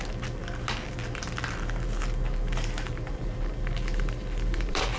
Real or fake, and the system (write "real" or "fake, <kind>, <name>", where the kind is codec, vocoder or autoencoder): fake, vocoder, BigVGAN v2